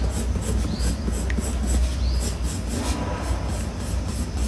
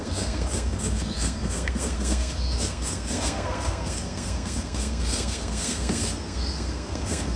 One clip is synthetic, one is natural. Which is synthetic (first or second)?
second